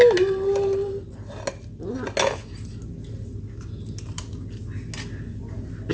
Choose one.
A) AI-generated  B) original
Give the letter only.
B